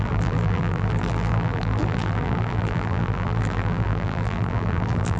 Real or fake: fake